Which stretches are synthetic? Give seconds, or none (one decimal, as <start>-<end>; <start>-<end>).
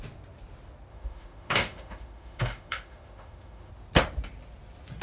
0.9-3.7